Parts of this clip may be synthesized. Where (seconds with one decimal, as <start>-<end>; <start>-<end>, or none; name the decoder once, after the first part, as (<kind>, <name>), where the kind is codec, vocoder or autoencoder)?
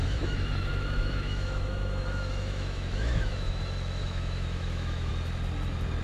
0.0-3.6 (autoencoder, DAC-VAE); 4.0-5.1